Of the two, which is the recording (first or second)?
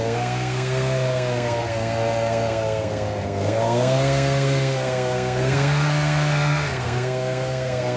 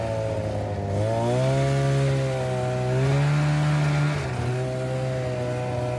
second